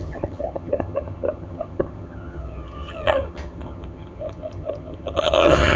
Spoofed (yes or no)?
yes